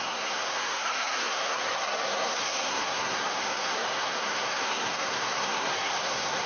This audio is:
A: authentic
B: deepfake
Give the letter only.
B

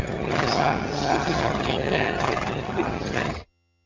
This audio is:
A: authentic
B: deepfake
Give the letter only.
B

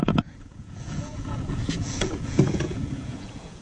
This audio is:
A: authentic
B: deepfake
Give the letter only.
B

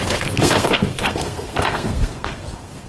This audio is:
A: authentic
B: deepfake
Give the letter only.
B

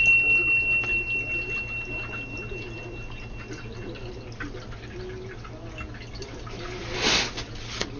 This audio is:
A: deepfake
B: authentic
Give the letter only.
B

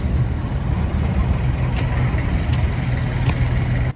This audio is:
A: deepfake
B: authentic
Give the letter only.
B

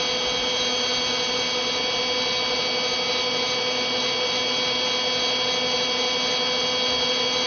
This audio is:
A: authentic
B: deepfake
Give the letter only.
A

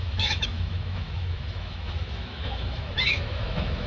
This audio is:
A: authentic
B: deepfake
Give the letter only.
B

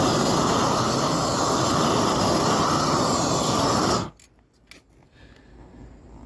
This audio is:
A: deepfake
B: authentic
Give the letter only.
B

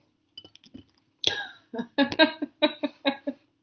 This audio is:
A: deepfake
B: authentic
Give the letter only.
B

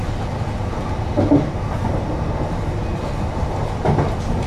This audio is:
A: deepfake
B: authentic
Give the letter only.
B